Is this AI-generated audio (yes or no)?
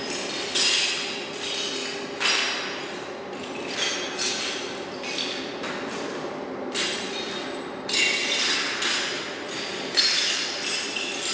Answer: no